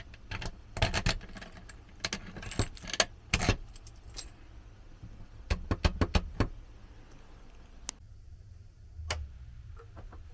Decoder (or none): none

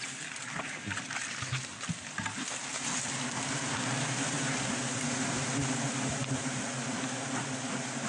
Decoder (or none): none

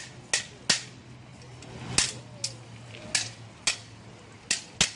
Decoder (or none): none